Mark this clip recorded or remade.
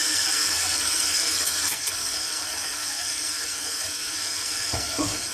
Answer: remade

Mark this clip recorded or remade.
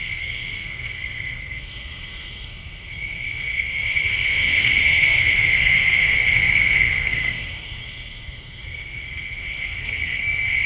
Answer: remade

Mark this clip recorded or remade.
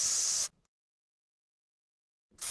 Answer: recorded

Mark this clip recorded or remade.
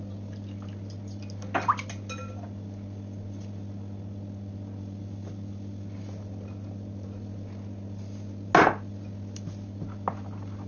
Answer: recorded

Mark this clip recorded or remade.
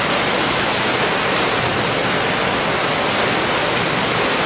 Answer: recorded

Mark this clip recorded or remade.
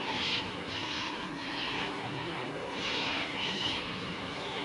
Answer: remade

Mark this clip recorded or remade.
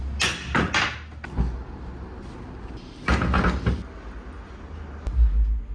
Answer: recorded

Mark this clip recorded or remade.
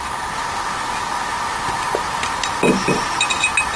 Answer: recorded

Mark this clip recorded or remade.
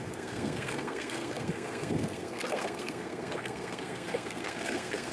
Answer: remade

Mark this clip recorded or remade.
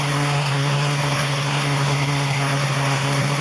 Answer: remade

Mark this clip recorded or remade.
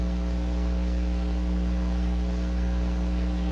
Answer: remade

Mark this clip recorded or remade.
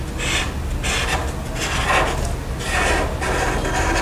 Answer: recorded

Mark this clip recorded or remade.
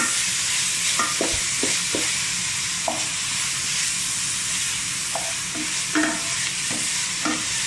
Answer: recorded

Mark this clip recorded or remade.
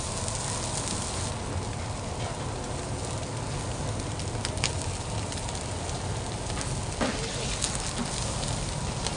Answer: recorded